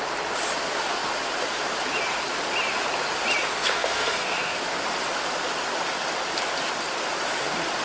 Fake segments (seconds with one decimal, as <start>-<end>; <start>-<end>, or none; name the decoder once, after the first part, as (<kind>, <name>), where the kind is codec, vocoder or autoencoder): 3.5-4.6 (codec, SNAC)